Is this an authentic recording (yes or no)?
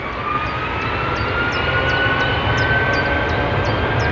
yes